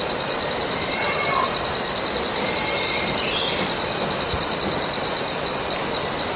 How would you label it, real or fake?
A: fake